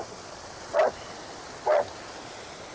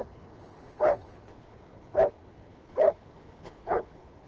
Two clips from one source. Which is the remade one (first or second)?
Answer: second